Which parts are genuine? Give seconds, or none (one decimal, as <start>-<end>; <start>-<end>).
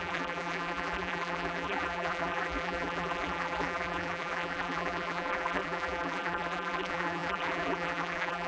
none